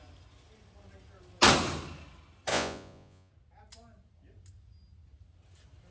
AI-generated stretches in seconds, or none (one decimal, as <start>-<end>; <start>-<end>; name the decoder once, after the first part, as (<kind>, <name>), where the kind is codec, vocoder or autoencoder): 2.5-3.3 (vocoder, Vocos)